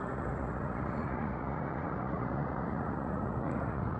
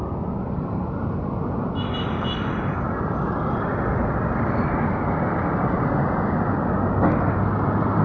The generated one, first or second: first